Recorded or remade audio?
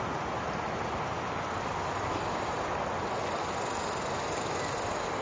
recorded